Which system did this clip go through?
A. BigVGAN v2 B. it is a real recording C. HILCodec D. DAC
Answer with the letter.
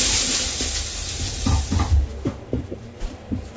B